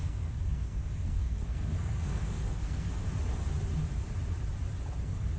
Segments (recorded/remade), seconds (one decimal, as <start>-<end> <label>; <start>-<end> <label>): 0.0-3.0 remade; 3.0-5.0 recorded; 5.0-5.4 remade